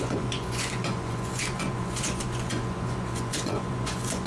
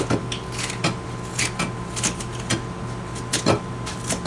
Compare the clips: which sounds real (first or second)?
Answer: second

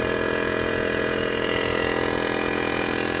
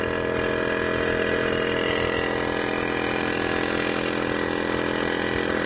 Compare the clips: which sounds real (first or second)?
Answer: second